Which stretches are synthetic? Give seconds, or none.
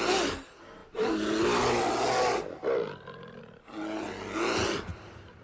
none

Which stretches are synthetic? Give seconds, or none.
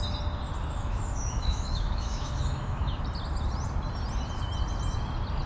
0.7-3.0 (autoencoder, DAC-VAE)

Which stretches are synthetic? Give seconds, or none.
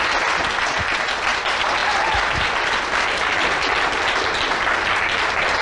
none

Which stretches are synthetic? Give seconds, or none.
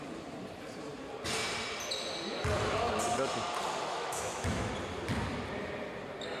3.9-4.7 (autoencoder, DAC-VAE)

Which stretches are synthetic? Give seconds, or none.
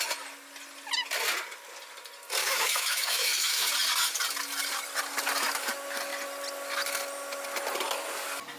2.4-3.7 (autoencoder, DAC-VAE)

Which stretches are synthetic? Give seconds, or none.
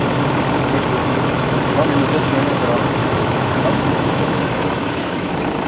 1.0-1.6 (autoencoder, DAC-VAE); 3.0-5.3